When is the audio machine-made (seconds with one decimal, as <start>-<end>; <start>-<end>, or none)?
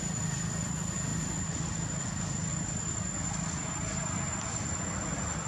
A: none